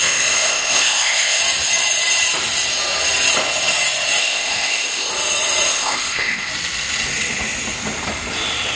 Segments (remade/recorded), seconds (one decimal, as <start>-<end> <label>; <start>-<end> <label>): 0.0-1.4 remade; 1.4-4.2 recorded; 4.2-5.1 remade; 5.1-5.7 recorded; 5.7-6.5 remade; 6.5-8.8 recorded